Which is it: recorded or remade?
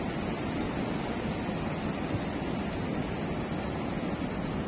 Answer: recorded